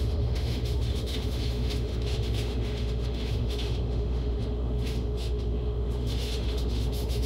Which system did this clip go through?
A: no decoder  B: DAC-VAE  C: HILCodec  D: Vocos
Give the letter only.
B